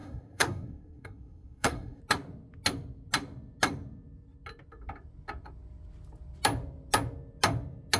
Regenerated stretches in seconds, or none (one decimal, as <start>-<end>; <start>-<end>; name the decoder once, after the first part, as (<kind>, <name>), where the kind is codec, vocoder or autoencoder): 0.0-2.0 (codec, SNAC)

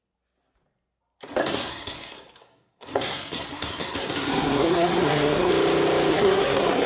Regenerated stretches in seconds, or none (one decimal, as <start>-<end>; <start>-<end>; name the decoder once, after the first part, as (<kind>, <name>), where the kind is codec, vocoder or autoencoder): 1.4-5.5 (codec, SNAC); 6.1-6.9

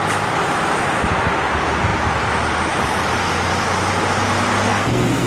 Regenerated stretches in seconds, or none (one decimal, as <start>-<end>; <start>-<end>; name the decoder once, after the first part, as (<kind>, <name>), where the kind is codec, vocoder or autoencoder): 4.7-5.3 (codec, SNAC)

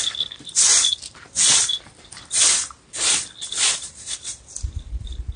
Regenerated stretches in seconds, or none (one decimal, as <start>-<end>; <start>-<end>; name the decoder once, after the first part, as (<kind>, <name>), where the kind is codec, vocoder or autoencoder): none